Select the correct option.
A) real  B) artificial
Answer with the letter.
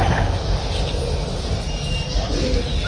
A